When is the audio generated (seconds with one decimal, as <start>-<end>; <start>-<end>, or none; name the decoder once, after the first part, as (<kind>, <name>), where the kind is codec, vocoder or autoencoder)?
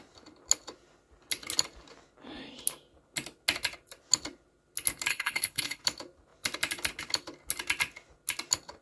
5.1-5.8 (codec, HILCodec)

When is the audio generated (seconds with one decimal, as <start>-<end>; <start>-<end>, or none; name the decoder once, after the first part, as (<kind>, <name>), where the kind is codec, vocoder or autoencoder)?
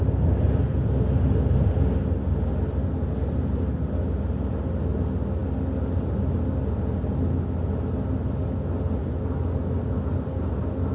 none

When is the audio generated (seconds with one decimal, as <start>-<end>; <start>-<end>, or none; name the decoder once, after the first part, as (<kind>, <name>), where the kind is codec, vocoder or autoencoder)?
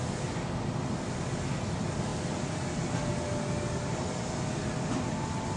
none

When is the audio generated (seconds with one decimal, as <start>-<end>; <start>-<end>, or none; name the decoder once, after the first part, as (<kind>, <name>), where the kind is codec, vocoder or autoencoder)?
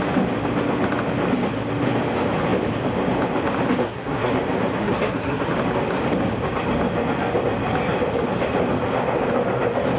3.8-4.3 (codec, SNAC); 4.8-5.5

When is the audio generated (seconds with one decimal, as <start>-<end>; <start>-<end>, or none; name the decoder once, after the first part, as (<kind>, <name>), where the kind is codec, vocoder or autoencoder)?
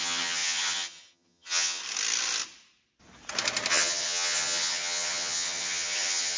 0.0-1.8 (vocoder, HiFi-GAN); 3.7-6.4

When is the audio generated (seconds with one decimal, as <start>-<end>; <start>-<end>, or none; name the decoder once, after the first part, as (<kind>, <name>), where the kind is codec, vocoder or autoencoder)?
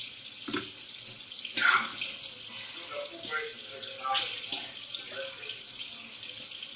none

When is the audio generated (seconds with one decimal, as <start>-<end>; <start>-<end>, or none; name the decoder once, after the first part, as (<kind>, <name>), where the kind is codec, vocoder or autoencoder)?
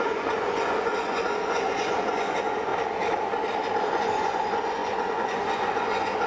0.0-2.7 (vocoder, Vocos); 3.8-6.3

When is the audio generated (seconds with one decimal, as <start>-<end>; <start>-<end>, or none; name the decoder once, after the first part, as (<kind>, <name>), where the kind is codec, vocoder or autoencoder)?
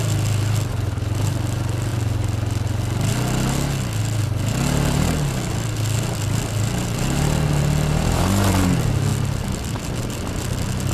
none